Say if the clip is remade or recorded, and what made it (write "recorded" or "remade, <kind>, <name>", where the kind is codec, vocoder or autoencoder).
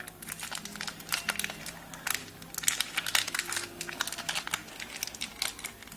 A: recorded